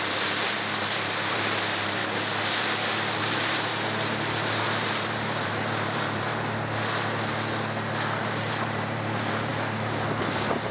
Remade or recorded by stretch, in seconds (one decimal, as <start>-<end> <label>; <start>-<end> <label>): 0.0-2.0 remade; 2.0-3.2 recorded; 3.2-3.7 remade; 3.7-4.9 recorded; 4.9-6.3 remade; 6.3-8.2 recorded; 8.2-9.5 remade; 9.5-10.2 recorded; 10.2-10.7 remade